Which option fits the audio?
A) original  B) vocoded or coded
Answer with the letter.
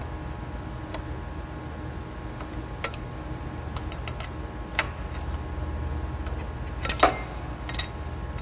A